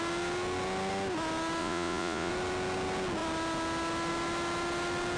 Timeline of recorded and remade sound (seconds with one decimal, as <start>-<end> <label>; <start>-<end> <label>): 0.0-1.6 recorded; 1.6-2.3 remade; 2.3-5.2 recorded